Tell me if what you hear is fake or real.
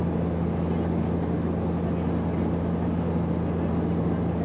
real